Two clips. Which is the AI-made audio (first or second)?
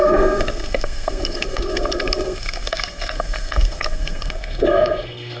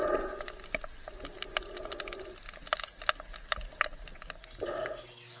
first